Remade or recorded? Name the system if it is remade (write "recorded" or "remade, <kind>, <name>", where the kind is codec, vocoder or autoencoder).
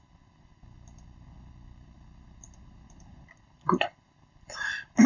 recorded